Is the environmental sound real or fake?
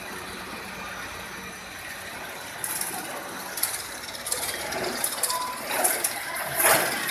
real